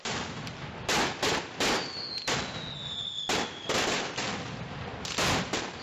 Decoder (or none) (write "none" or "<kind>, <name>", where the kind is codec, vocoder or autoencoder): none